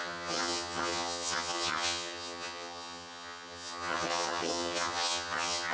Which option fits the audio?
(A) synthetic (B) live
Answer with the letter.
A